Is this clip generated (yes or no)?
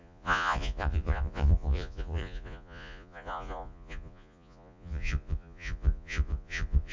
yes